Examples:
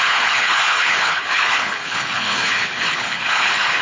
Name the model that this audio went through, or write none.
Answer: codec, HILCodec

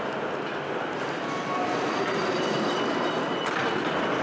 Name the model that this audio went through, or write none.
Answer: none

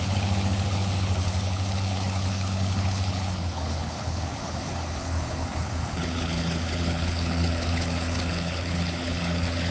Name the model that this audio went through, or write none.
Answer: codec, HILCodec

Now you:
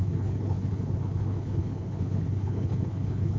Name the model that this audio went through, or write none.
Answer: codec, HILCodec